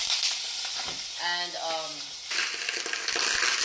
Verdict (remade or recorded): recorded